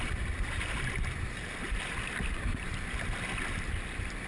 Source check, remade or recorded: remade